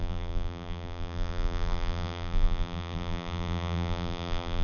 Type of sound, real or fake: fake